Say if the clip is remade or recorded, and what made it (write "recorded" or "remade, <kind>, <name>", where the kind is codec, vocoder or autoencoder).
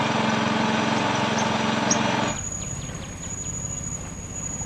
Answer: recorded